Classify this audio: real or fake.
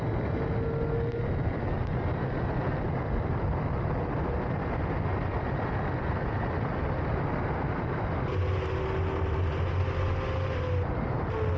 real